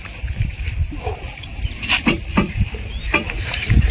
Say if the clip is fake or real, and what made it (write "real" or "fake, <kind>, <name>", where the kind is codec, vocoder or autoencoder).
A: fake, vocoder, BigVGAN v2